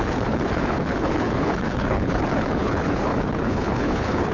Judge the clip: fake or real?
fake